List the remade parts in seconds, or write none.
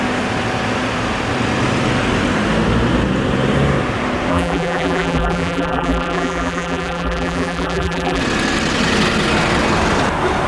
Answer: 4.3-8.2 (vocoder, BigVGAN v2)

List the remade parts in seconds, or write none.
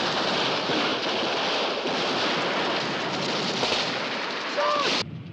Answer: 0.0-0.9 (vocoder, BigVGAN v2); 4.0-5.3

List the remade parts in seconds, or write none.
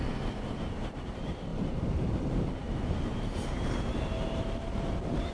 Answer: 1.5-3.8 (vocoder, BigVGAN v2)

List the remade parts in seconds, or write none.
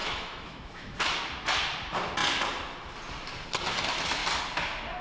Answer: 0.0-1.0 (autoencoder, DAC-VAE)